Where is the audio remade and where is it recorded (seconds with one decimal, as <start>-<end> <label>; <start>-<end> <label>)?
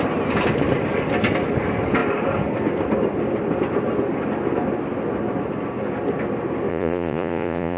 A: 0.0-6.7 recorded; 6.7-7.8 remade